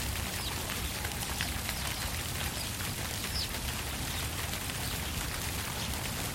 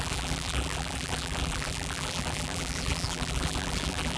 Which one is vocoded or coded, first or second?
second